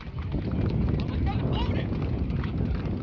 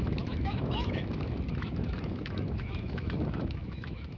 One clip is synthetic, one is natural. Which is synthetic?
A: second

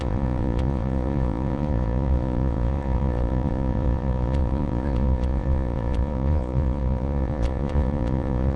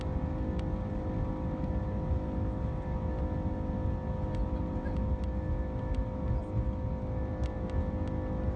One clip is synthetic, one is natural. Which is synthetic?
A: first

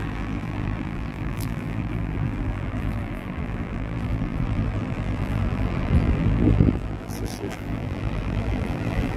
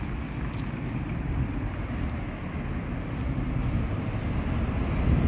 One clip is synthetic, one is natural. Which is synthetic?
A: first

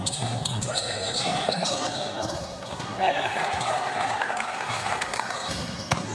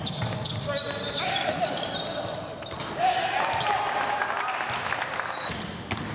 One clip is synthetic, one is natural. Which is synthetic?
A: first